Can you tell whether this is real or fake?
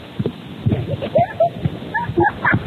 real